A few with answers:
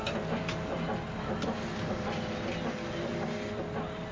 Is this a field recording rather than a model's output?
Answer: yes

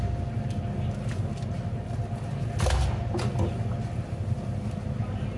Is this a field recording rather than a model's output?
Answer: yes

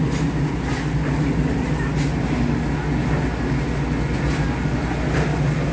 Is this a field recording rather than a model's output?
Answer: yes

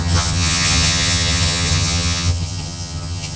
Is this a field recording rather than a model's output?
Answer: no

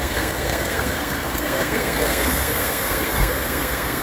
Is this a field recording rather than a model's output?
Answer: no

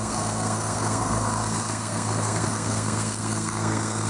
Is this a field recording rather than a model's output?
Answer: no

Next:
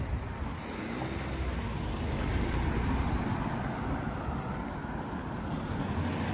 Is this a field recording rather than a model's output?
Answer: yes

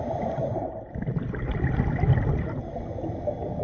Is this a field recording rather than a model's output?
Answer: yes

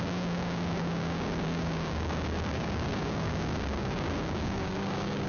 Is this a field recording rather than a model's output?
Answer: no